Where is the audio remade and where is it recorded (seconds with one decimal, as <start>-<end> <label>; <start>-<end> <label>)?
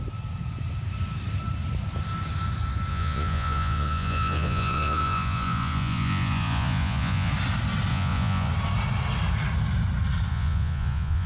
0.0-2.9 recorded; 2.9-7.3 remade; 7.3-7.9 recorded; 7.9-8.5 remade; 8.5-10.3 recorded; 10.3-11.3 remade